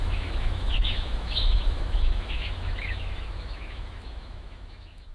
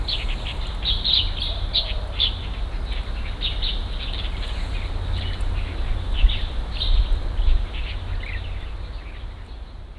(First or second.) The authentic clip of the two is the second